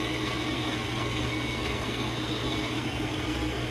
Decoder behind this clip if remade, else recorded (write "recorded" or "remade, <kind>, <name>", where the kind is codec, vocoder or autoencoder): remade, codec, SNAC